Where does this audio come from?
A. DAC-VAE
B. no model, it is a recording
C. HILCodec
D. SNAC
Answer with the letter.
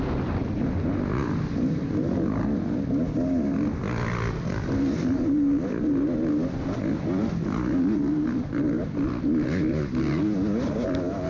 B